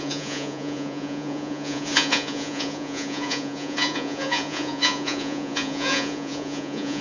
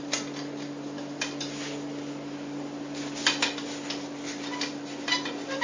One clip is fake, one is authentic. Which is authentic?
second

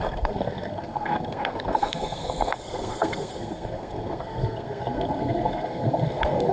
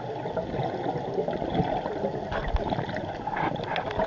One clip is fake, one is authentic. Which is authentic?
second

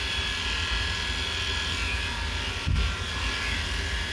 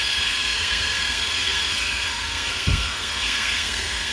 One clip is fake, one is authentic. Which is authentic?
first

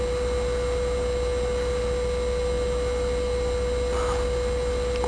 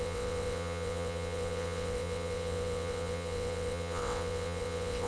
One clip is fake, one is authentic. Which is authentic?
first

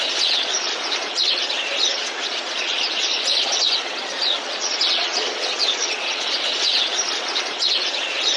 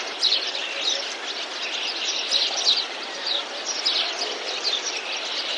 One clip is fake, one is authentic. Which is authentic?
second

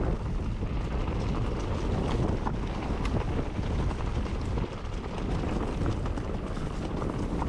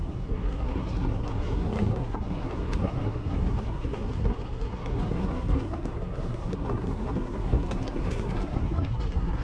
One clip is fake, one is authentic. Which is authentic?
first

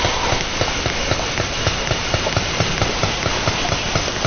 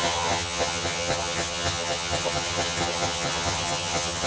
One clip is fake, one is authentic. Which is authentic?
first